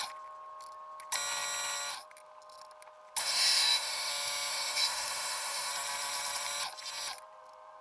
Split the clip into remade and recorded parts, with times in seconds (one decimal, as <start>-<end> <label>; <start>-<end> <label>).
0.0-3.2 recorded; 3.2-4.1 remade; 4.1-4.5 recorded; 4.5-5.7 remade; 5.7-7.8 recorded